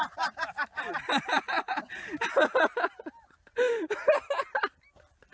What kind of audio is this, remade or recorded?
remade